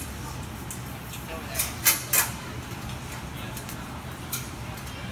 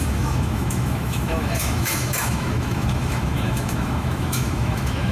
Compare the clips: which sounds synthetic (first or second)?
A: second